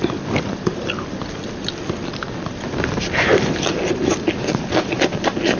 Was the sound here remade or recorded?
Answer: recorded